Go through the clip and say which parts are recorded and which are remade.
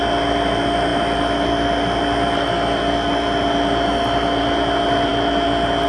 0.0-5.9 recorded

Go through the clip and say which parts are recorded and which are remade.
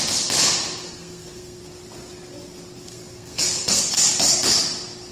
0.0-0.8 recorded; 0.8-1.6 remade; 1.6-2.9 recorded; 2.9-3.8 remade; 3.8-5.1 recorded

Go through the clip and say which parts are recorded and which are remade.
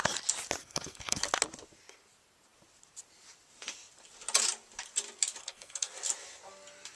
0.0-0.6 recorded; 0.6-1.2 remade; 1.2-5.4 recorded; 5.4-5.9 remade; 5.9-7.0 recorded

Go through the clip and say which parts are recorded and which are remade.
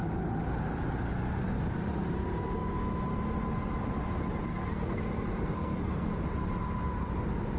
0.0-4.5 recorded; 4.5-6.1 remade; 6.1-7.6 recorded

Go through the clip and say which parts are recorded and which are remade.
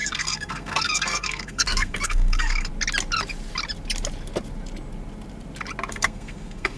0.0-2.7 remade; 2.7-5.9 recorded; 5.9-6.8 remade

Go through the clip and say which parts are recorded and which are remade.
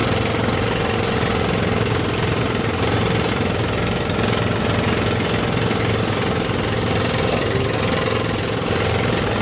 0.0-9.4 recorded